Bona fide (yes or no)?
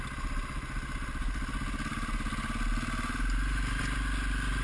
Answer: yes